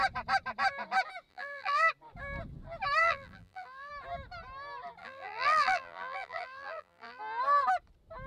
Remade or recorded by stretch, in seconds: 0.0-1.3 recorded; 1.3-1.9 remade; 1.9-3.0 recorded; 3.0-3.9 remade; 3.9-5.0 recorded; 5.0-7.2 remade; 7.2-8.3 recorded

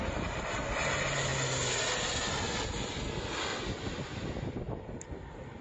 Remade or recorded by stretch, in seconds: 0.0-5.6 recorded

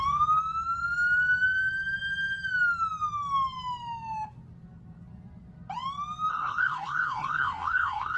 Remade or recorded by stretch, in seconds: 0.0-6.3 recorded; 6.3-8.2 remade

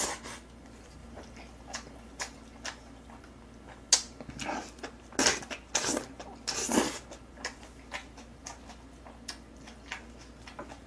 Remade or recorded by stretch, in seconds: 0.0-10.9 recorded

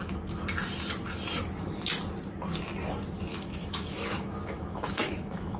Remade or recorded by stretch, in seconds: 0.0-3.3 recorded; 3.3-5.6 remade

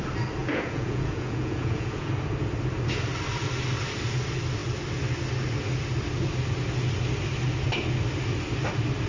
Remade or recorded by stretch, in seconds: 0.0-0.4 recorded; 0.4-2.1 remade; 2.1-9.1 recorded

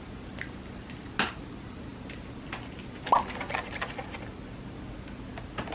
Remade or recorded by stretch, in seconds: 0.0-5.7 recorded